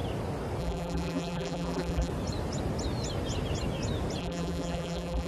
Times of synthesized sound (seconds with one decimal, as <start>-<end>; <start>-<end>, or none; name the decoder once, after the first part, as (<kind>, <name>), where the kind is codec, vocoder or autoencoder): 0.6-2.1 (vocoder, BigVGAN v2); 4.2-5.3